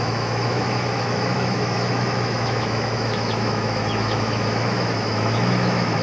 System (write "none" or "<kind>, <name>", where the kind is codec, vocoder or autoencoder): autoencoder, DAC-VAE